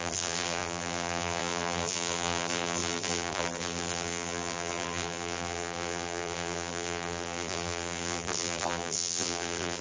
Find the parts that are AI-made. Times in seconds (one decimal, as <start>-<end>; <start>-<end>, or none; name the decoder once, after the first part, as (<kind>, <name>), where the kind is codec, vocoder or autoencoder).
0.0-9.8 (vocoder, BigVGAN v2)